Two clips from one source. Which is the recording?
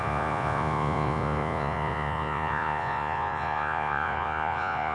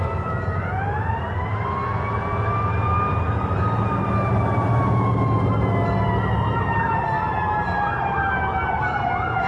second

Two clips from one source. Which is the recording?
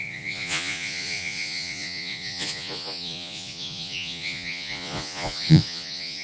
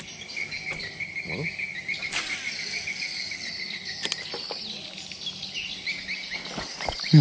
second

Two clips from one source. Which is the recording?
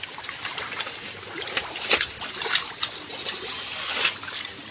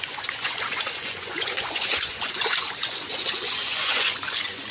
first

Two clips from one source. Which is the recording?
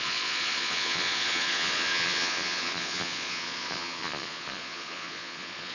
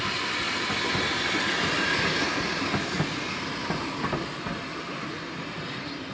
second